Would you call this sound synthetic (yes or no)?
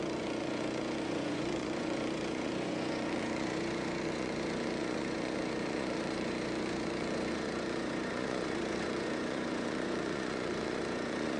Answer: yes